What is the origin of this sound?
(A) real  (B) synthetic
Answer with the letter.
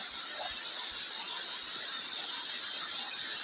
A